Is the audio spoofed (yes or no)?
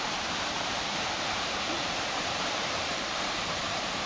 yes